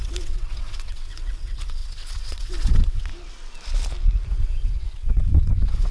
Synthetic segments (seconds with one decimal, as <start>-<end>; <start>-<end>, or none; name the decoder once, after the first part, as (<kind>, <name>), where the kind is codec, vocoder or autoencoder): 0.0-3.1 (vocoder, WaveNeXt); 4.3-5.9